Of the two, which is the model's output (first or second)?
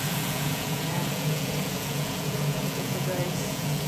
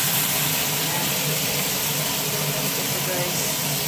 first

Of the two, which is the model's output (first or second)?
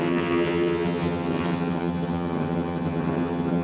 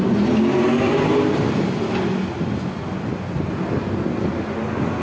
first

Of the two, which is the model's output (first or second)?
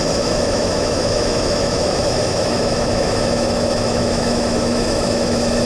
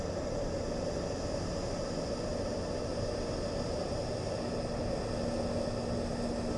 first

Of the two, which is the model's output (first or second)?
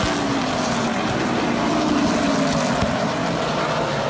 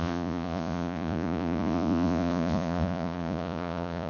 second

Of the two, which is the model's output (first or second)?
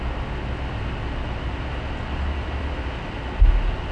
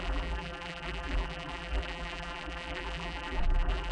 second